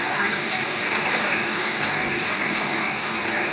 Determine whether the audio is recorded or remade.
remade